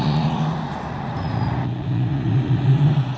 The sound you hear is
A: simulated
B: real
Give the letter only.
A